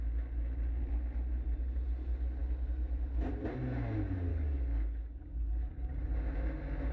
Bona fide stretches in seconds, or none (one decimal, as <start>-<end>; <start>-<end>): 0.0-4.3; 5.9-6.9